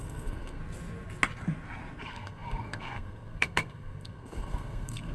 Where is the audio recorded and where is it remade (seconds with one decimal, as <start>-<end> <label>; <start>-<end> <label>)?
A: 0.0-0.6 remade; 0.6-2.0 recorded; 2.0-5.1 remade